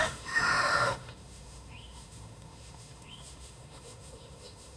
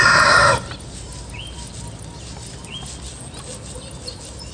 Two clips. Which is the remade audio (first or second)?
first